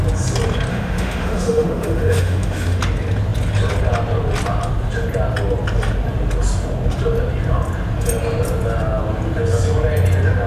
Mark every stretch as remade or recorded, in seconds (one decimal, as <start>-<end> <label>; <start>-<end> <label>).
0.0-0.7 recorded; 0.7-2.8 remade; 2.8-10.5 recorded